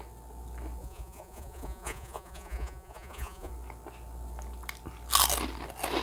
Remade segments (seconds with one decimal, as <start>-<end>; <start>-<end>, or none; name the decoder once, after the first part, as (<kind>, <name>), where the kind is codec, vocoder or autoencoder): 0.8-3.5 (vocoder, Vocos)